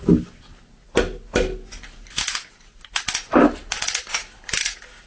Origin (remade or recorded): recorded